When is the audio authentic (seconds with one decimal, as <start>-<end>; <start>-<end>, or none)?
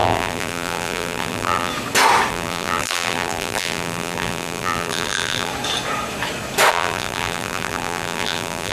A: 1.7-2.3; 5.5-6.7